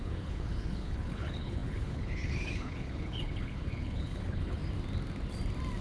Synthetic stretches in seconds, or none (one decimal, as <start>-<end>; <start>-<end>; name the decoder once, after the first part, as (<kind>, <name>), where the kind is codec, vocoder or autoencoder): 0.0-4.6 (codec, HILCodec)